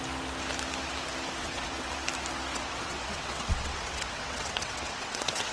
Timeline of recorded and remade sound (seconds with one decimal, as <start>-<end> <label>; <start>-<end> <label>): 0.0-1.4 recorded; 1.4-1.9 remade; 1.9-2.5 recorded; 2.5-5.5 remade